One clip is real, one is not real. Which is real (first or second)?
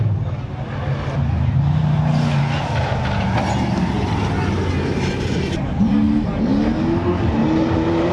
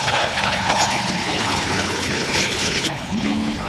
first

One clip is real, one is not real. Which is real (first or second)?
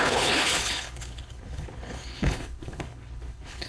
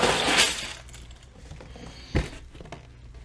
second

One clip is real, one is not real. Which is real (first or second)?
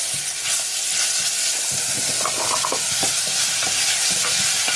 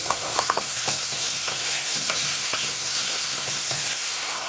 first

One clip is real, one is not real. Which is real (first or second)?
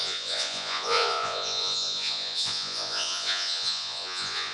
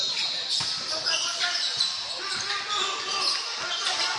second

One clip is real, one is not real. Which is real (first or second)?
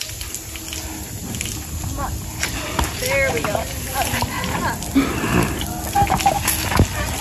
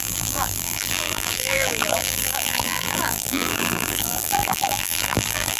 first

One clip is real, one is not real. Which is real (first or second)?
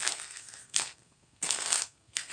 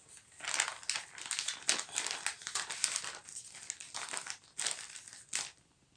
second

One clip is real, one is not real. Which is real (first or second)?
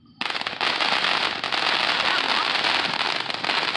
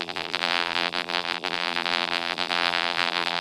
first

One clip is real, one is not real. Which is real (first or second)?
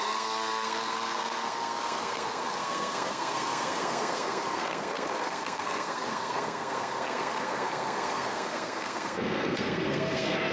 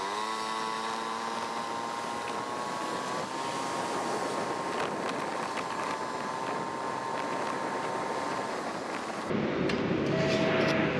second